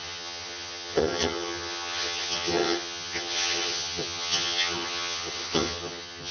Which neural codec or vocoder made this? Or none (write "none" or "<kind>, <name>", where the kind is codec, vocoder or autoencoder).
vocoder, HiFi-GAN